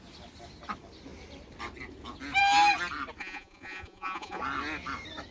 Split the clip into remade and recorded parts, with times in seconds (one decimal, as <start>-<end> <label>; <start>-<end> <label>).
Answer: 0.0-3.2 recorded; 3.2-4.4 remade; 4.4-5.3 recorded